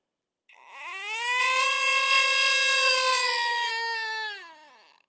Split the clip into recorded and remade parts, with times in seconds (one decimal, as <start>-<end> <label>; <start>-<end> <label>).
0.0-1.4 recorded; 1.4-3.7 remade; 3.7-5.1 recorded